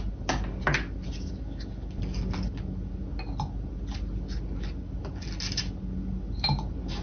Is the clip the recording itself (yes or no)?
yes